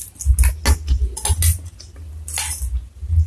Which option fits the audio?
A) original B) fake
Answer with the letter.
A